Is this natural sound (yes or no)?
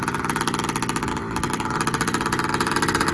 yes